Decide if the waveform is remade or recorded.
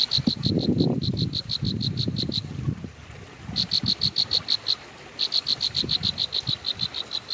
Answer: recorded